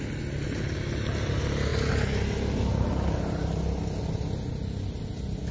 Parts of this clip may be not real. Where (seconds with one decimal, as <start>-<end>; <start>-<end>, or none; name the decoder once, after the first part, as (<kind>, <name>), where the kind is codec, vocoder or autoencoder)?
none